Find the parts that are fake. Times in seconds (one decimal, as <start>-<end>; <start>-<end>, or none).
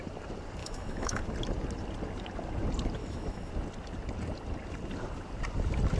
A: 0.6-1.2; 3.0-3.5